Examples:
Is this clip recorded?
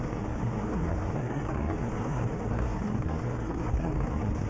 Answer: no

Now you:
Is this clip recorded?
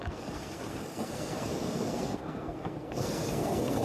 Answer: no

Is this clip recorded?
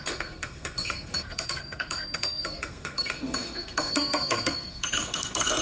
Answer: no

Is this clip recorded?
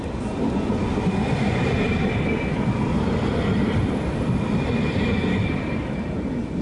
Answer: yes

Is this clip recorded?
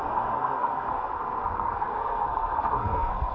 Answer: no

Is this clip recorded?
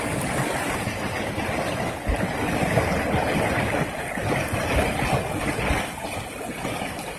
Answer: yes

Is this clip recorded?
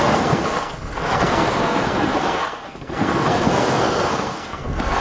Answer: no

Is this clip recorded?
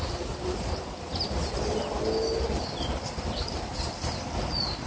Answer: yes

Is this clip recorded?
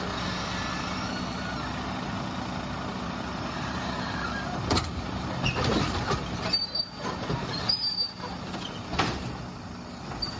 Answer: yes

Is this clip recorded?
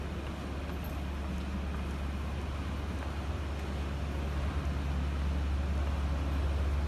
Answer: yes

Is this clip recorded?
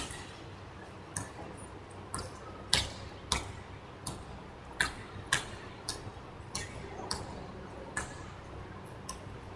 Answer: yes